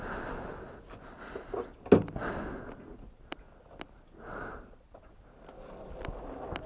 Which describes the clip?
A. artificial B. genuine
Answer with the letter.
B